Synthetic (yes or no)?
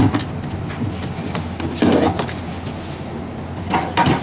no